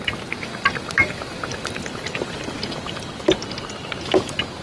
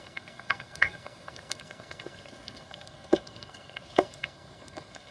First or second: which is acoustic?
first